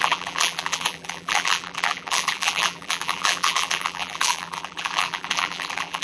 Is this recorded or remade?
remade